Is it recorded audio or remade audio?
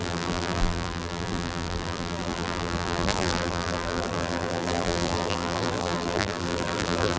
remade